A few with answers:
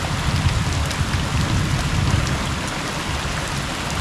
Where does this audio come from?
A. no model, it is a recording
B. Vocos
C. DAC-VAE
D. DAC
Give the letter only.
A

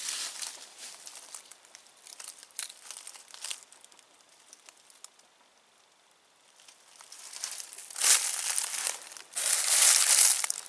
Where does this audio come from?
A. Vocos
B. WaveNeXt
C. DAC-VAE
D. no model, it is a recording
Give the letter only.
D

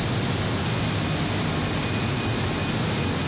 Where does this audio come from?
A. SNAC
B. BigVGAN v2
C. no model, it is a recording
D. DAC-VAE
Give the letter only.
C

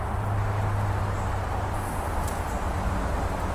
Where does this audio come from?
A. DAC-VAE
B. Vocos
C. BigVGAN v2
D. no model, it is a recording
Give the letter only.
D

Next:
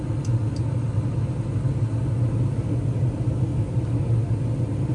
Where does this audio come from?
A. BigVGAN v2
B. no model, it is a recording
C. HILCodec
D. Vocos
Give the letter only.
B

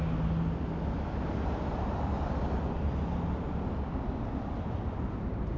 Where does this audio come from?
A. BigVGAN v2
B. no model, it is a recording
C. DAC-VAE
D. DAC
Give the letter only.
B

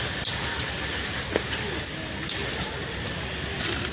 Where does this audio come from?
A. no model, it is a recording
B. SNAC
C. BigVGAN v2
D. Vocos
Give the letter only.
A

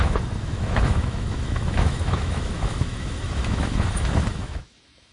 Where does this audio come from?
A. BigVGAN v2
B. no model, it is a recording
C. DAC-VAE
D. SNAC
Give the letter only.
C